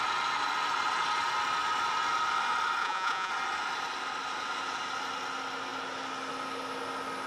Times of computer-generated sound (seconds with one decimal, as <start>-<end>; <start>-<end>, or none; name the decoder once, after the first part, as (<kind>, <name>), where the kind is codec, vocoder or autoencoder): 2.8-3.3 (vocoder, Vocos)